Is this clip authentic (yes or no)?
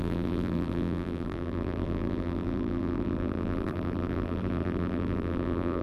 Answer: no